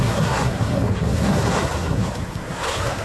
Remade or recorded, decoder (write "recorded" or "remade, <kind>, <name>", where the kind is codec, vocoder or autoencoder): remade, codec, SNAC